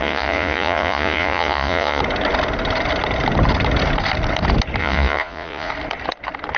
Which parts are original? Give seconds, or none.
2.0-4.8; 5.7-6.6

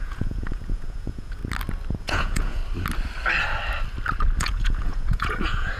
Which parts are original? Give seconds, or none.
1.4-2.0; 2.6-4.4

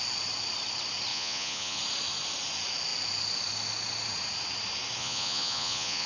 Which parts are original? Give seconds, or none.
0.0-1.1; 1.8-5.0

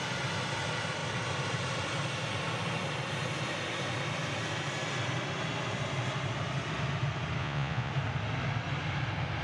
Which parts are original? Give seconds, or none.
0.0-7.4; 7.9-9.4

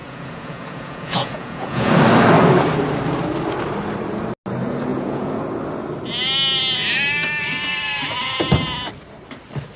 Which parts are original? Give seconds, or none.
1.9-4.9; 5.4-9.8

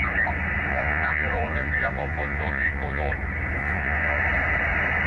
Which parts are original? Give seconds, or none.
0.0-0.7; 3.1-3.6; 4.2-5.1

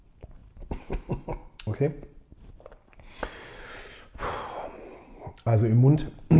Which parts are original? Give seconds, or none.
0.0-6.4

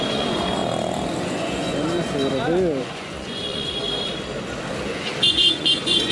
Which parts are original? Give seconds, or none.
0.6-1.2; 1.7-2.8; 3.8-4.8